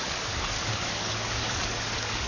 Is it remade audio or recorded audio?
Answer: remade